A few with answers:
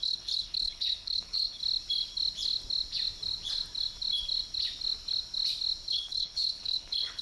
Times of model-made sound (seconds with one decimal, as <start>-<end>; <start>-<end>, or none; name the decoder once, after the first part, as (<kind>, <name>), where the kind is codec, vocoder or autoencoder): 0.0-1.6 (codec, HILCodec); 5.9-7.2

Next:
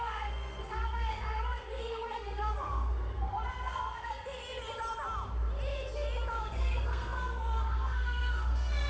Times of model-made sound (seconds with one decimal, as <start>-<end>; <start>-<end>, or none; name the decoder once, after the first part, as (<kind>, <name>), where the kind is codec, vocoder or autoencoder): 0.0-4.4 (codec, SNAC); 6.3-8.9

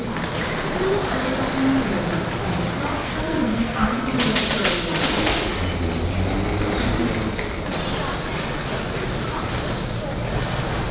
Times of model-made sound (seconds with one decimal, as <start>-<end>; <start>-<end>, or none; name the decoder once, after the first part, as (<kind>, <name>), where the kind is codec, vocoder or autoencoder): 2.9-4.0 (codec, SNAC)

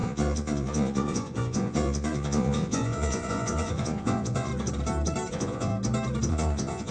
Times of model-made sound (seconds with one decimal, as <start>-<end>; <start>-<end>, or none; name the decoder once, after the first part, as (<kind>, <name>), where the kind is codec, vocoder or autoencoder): 0.0-4.5 (vocoder, Vocos); 5.3-5.7; 6.3-6.9

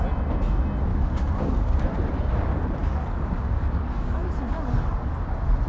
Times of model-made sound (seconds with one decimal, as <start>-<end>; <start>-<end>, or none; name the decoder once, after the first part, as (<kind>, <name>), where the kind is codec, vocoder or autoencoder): 0.9-1.8 (codec, DAC); 2.8-5.1

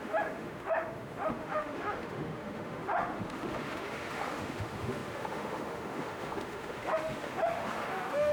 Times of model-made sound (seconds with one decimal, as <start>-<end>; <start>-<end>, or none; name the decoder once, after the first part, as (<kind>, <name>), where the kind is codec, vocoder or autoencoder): 0.0-8.3 (autoencoder, DAC-VAE)

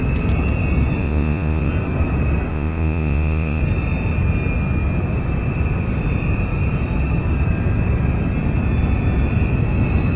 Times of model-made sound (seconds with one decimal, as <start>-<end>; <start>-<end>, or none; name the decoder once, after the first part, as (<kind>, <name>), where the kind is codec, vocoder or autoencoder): 1.0-1.7 (vocoder, Vocos); 2.5-3.6